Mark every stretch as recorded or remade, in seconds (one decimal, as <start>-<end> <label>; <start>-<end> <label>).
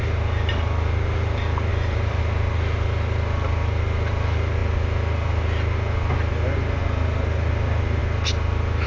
0.0-1.7 recorded; 1.7-2.2 remade; 2.2-8.9 recorded